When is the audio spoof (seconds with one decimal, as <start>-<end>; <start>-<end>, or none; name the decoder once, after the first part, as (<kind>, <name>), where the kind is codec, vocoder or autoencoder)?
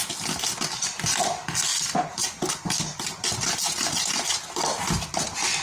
none